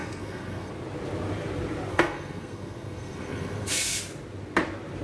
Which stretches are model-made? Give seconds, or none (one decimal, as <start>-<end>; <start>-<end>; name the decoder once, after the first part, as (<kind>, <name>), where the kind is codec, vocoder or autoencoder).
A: 0.0-0.7 (codec, SNAC); 1.9-4.0